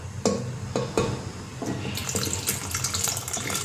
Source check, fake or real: real